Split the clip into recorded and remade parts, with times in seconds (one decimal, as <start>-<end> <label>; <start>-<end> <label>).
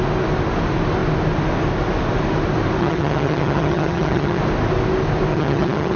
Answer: 0.0-2.8 recorded; 2.8-4.4 remade; 4.4-5.3 recorded; 5.3-6.0 remade